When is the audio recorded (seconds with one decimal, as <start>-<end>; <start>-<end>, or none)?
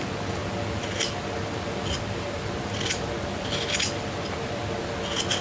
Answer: 0.0-5.4